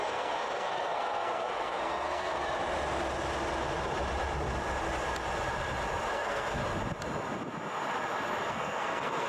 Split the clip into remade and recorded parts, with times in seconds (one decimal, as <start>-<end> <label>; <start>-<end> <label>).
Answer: 0.0-2.4 remade; 2.4-6.1 recorded; 6.1-6.6 remade; 6.6-8.5 recorded; 8.5-9.3 remade